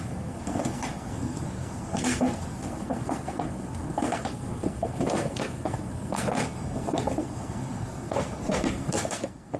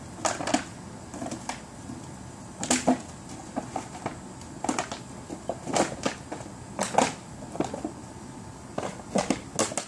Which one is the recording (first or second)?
second